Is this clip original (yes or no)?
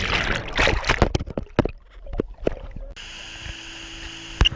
yes